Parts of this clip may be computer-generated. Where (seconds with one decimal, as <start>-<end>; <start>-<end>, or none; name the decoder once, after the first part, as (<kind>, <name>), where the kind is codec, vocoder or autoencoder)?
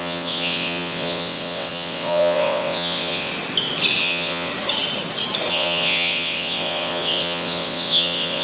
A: 0.0-3.3 (vocoder, WaveNeXt); 4.0-4.5; 5.5-8.4